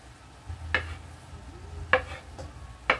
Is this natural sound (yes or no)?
yes